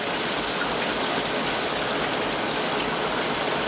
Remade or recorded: recorded